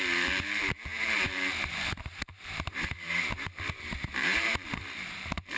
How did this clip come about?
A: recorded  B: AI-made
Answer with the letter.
B